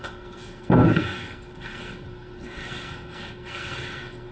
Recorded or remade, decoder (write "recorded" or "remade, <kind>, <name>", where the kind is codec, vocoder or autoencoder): remade, codec, SNAC